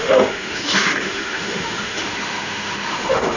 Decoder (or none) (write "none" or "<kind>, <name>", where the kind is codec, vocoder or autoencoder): autoencoder, DAC-VAE